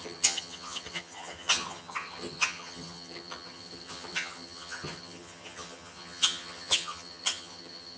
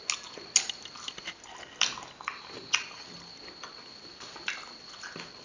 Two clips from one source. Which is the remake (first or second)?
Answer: first